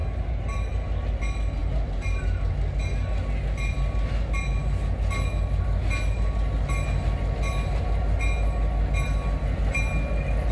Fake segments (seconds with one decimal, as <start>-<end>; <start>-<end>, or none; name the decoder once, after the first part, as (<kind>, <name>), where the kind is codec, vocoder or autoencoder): 1.6-2.5 (vocoder, BigVGAN v2)